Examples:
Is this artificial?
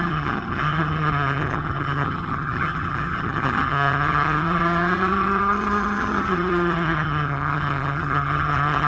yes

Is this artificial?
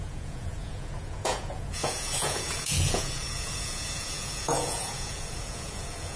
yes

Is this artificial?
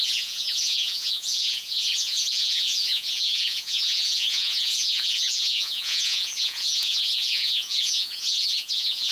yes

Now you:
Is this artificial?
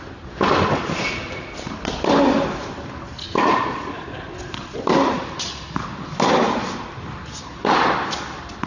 no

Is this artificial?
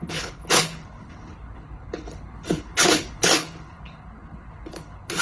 yes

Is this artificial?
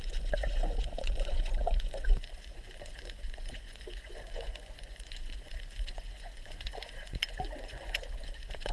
yes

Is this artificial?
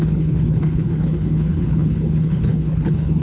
yes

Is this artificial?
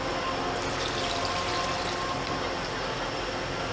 no